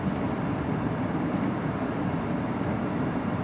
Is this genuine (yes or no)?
yes